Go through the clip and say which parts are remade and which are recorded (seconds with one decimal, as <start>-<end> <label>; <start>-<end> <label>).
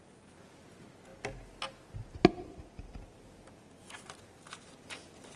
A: 0.0-5.4 recorded